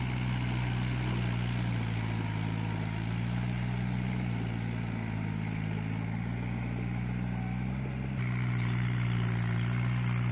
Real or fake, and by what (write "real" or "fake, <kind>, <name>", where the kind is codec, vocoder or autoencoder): real